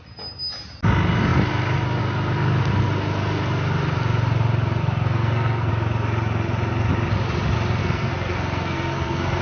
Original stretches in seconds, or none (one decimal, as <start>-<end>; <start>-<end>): 0.0-4.8; 5.7-7.8